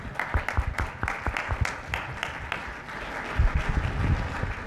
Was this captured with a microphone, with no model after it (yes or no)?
yes